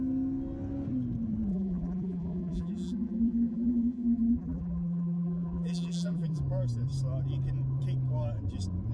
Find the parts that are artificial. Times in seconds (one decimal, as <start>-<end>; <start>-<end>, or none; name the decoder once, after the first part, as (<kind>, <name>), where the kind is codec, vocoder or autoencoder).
1.5-6.4 (vocoder, BigVGAN v2)

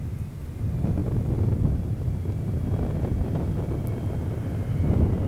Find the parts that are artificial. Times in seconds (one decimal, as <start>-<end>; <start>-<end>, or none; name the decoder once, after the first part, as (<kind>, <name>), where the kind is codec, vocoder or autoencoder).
1.0-2.0 (vocoder, BigVGAN v2)

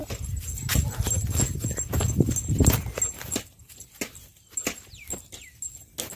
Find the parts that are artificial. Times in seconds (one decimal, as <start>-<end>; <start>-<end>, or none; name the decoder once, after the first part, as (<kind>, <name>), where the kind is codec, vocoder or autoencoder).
none

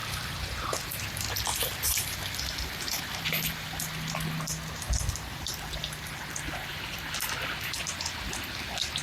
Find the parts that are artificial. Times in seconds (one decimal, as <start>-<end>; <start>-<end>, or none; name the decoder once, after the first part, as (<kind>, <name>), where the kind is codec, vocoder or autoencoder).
0.0-1.0 (vocoder, BigVGAN v2); 1.5-2.2

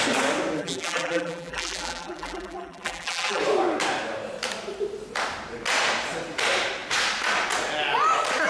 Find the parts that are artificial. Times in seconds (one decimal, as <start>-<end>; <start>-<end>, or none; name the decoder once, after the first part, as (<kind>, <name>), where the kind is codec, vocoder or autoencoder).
0.6-3.4 (vocoder, BigVGAN v2)